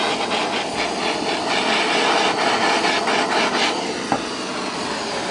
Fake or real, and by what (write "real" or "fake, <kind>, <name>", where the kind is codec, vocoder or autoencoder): real